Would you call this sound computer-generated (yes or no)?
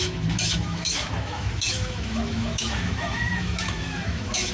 yes